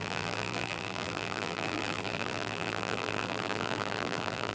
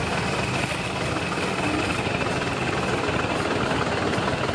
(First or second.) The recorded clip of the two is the second